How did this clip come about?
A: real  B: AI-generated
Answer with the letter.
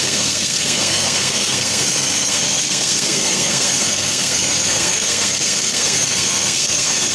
B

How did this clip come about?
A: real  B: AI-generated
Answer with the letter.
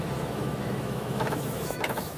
B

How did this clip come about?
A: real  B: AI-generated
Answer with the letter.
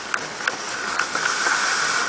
A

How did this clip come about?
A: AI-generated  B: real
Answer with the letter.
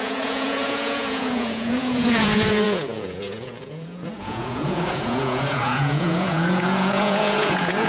A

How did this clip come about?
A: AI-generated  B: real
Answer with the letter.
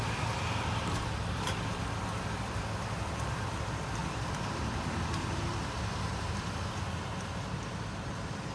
A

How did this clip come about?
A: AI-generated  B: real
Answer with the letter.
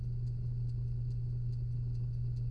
B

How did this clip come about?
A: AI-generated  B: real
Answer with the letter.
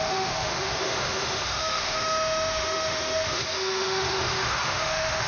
A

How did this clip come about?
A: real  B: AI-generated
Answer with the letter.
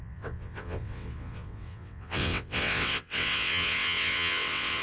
B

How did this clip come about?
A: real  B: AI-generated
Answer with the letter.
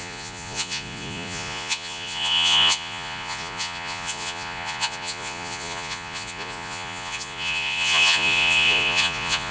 B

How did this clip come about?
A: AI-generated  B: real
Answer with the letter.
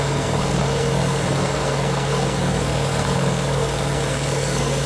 A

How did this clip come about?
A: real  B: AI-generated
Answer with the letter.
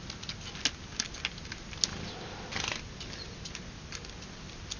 A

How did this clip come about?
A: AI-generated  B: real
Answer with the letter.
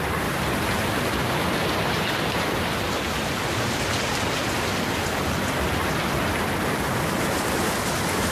B